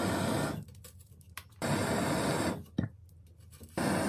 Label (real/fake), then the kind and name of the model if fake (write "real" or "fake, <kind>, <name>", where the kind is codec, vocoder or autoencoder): real